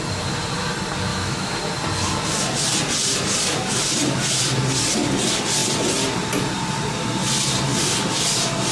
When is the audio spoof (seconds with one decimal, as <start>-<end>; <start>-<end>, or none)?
1.1-1.6